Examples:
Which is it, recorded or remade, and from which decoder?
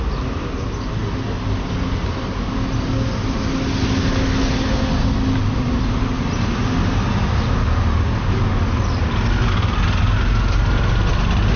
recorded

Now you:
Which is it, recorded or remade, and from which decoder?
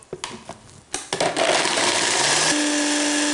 recorded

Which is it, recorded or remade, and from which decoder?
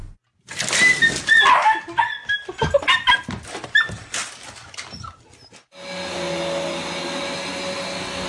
recorded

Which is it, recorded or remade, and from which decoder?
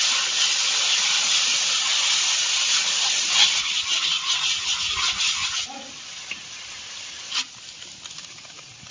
recorded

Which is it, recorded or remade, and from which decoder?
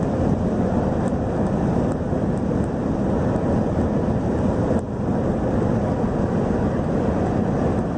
recorded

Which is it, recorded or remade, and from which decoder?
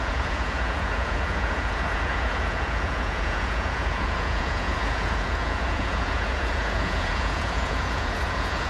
remade, vocoder, Vocos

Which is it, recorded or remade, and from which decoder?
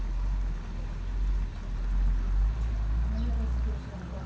recorded